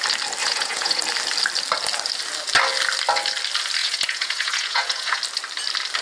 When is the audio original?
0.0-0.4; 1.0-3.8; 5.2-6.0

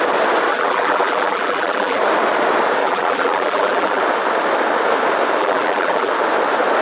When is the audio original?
0.0-0.5; 2.0-2.8; 4.0-5.4; 6.1-6.8

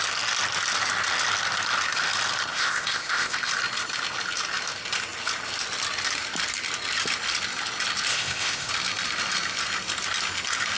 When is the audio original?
0.0-2.5; 3.5-8.1; 8.7-10.8

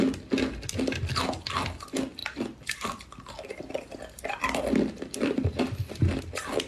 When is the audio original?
0.0-2.2; 6.2-6.7

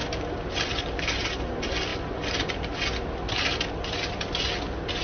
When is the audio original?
1.2-1.9; 3.7-5.0

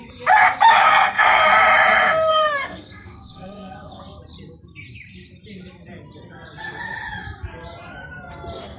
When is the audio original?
0.0-0.8; 1.4-2.3; 4.0-8.8

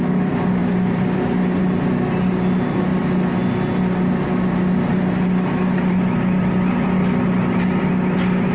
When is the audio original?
0.0-8.5

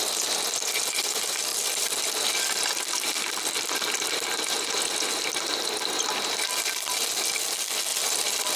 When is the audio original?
0.0-7.9